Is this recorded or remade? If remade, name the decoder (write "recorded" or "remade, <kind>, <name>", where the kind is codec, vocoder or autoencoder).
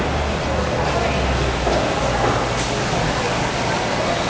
recorded